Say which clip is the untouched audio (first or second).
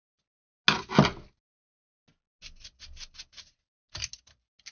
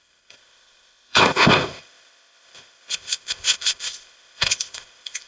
first